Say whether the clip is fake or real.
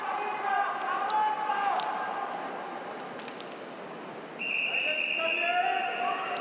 real